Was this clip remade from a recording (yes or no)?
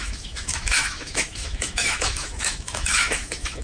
yes